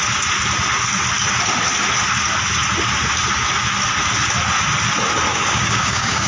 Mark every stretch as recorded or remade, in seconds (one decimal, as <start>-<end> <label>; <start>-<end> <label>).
0.0-5.3 recorded; 5.3-6.3 remade